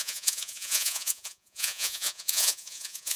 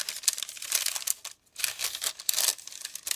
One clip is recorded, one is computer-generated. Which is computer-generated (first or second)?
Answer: first